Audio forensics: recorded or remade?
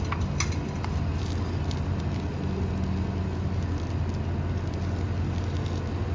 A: recorded